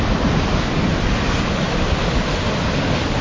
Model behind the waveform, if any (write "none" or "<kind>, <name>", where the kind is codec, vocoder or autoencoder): none